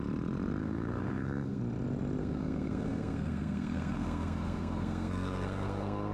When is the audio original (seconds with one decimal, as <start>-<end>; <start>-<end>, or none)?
0.0-0.6; 1.6-2.2